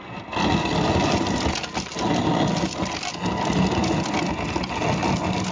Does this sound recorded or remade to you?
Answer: recorded